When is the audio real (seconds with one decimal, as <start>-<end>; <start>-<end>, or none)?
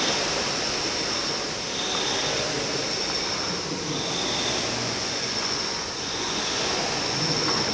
0.0-4.8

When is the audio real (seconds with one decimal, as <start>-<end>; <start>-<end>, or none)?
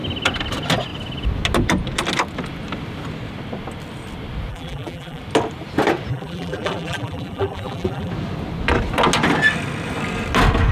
0.0-4.5; 5.2-6.1; 8.1-10.7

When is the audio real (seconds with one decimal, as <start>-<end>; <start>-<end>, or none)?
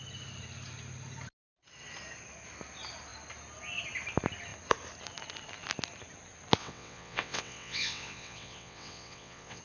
0.0-6.6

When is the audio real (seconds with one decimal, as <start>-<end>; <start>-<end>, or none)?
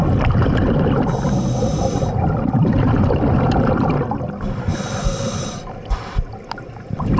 0.0-7.2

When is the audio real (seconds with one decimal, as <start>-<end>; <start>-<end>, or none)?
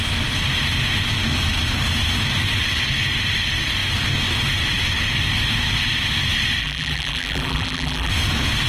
0.0-6.6; 8.1-8.7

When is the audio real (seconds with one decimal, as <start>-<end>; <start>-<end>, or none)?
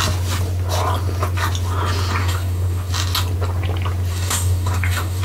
0.0-2.2; 2.9-4.1